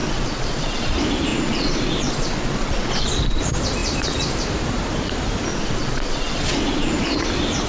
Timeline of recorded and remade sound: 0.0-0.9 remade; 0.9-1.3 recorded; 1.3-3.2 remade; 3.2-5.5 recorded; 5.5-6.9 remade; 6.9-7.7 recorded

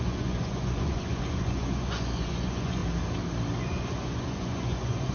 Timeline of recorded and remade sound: 0.0-2.8 remade; 2.8-3.6 recorded; 3.6-5.1 remade

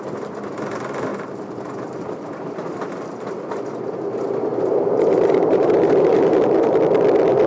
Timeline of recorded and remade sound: 0.0-1.1 recorded; 1.1-2.3 remade; 2.3-4.5 recorded; 4.5-6.8 remade; 6.8-7.5 recorded

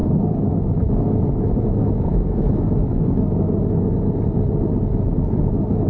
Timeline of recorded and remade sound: 0.0-3.5 remade; 3.5-5.9 recorded

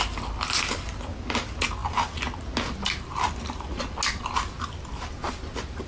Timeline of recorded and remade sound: 0.0-5.9 recorded

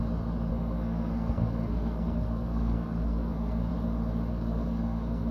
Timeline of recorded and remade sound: 0.0-0.5 recorded; 0.5-3.7 remade; 3.7-4.3 recorded; 4.3-5.3 remade

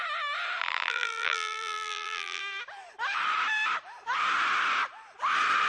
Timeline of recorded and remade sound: 0.0-0.6 recorded; 0.6-2.4 remade; 2.4-5.7 recorded